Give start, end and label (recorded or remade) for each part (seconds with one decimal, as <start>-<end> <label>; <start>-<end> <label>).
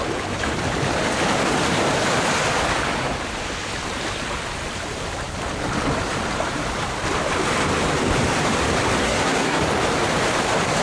0.0-9.0 recorded; 9.0-9.6 remade; 9.6-10.8 recorded